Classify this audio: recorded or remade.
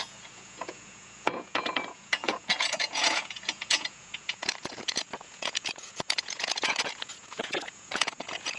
remade